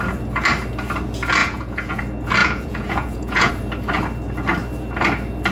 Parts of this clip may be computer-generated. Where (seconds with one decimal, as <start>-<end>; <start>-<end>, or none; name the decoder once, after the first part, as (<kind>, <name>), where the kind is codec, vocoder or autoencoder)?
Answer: 1.4-2.0 (vocoder, Vocos); 2.4-3.5